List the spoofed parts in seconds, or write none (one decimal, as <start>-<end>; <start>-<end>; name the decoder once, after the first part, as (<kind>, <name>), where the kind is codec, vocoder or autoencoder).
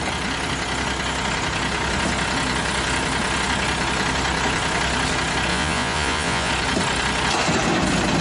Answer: 5.5-6.5 (vocoder, Vocos)